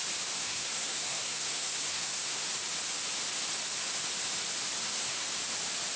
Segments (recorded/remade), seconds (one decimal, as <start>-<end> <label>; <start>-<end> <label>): 0.0-0.4 recorded; 0.4-2.4 remade; 2.4-4.8 recorded; 4.8-5.3 remade; 5.3-6.0 recorded